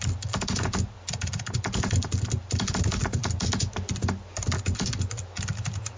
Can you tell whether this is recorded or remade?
recorded